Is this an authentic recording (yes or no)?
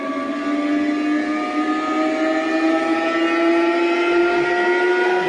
yes